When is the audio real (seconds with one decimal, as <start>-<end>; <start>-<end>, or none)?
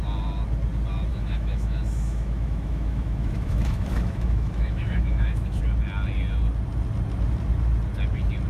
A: 0.0-1.1; 5.6-8.5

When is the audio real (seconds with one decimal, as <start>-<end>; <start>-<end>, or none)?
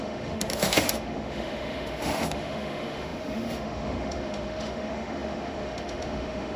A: none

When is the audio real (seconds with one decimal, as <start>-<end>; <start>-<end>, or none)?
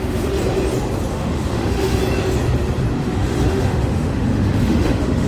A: 0.4-1.1; 2.0-3.0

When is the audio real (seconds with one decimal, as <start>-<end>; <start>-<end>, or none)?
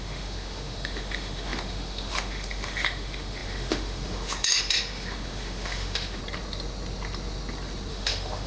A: 6.2-7.9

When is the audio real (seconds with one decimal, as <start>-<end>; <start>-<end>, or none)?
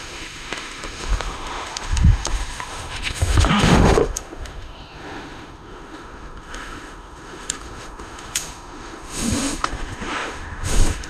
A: none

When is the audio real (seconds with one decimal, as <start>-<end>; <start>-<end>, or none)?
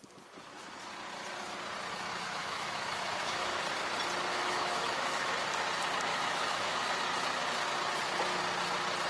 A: 0.0-2.1; 3.6-4.3; 5.3-6.1; 6.9-9.1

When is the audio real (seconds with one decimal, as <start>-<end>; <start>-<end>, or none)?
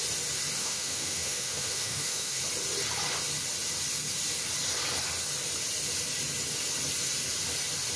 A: 0.0-0.6; 2.4-8.0